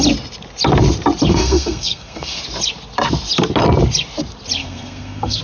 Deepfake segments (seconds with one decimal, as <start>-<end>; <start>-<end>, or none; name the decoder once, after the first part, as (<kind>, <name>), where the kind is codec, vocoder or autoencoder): 1.3-2.4 (codec, SNAC); 4.6-5.4